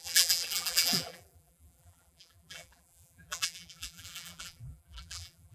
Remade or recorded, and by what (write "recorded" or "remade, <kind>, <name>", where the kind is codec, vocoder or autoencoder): remade, vocoder, BigVGAN v2